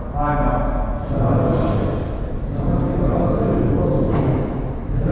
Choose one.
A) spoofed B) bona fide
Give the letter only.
B